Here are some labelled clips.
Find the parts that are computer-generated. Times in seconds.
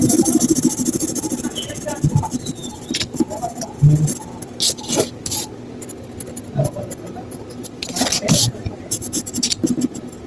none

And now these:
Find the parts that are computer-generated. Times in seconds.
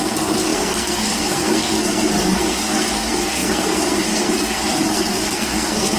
0.0-6.0 (codec, SNAC)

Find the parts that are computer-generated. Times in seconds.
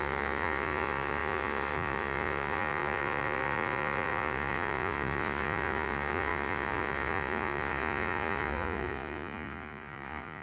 0.0-10.4 (vocoder, Vocos)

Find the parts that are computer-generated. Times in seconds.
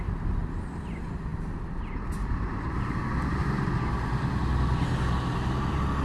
2.2-3.0 (vocoder, BigVGAN v2); 3.4-4.3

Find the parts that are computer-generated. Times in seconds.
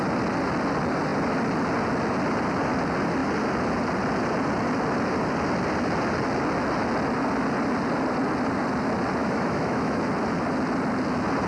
9.2-10.0 (autoencoder, DAC-VAE)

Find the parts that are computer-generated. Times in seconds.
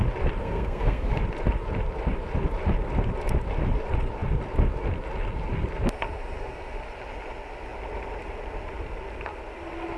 0.4-1.2 (codec, SNAC)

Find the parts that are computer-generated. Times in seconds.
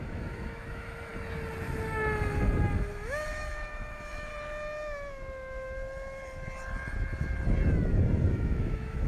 0.0-1.1 (autoencoder, DAC-VAE); 2.9-4.3; 8.3-9.1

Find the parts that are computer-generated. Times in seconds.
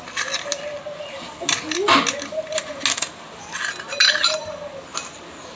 none